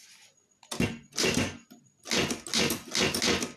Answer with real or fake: real